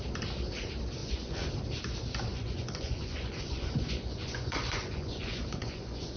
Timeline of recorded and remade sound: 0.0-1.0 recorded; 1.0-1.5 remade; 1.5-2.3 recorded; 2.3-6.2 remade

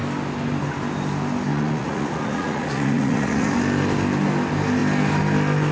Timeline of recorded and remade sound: 0.0-1.5 recorded; 1.5-3.5 remade; 3.5-5.7 recorded

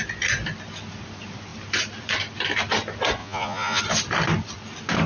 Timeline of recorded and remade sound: 0.0-3.2 recorded; 3.2-3.8 remade; 3.8-5.1 recorded

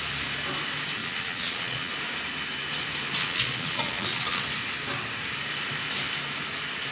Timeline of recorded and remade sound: 0.0-1.0 recorded; 1.0-1.9 remade; 1.9-3.2 recorded; 3.2-4.4 remade; 4.4-6.9 recorded